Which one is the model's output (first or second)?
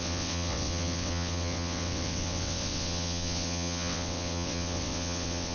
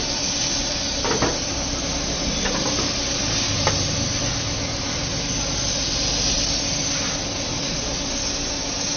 first